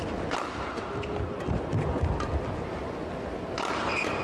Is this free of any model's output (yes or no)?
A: yes